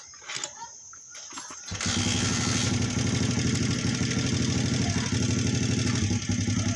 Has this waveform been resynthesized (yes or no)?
no